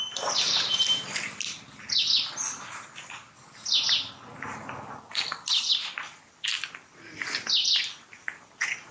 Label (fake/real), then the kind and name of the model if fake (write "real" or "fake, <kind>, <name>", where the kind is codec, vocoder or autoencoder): real